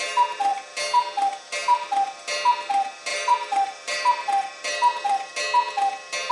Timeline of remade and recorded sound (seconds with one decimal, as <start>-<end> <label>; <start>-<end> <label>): 0.0-3.1 recorded; 3.1-5.3 remade; 5.3-6.3 recorded